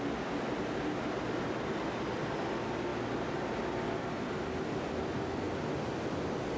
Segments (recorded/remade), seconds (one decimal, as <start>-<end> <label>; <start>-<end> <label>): 0.0-6.6 recorded